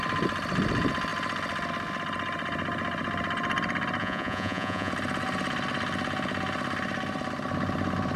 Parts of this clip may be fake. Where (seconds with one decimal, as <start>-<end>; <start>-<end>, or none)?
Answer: 4.0-4.9